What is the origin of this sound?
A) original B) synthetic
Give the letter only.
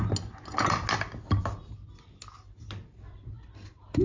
A